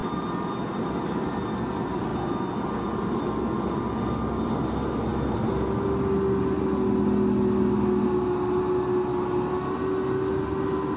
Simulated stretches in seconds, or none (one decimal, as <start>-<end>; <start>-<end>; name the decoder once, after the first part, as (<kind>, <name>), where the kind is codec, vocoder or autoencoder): none